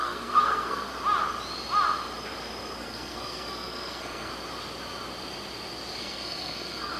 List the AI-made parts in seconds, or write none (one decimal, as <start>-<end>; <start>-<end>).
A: 0.0-0.9; 2.8-4.3; 6.0-7.0